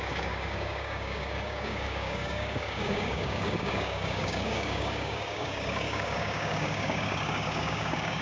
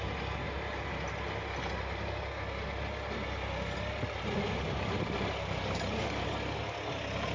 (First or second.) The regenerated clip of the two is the first